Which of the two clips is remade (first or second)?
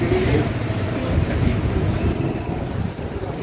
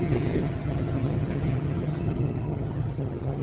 second